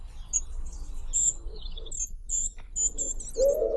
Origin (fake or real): real